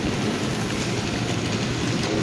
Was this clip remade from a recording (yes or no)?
no